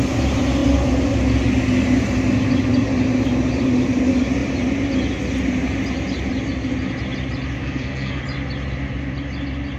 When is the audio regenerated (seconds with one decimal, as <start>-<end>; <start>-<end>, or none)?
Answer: 7.6-8.2